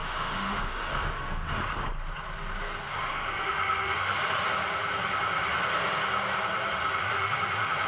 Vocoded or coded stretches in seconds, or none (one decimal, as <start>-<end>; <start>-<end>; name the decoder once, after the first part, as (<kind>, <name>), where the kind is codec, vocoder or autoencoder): 0.0-1.6 (autoencoder, DAC-VAE); 3.1-4.2; 7.0-7.9